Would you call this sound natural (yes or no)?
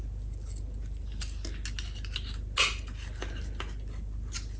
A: yes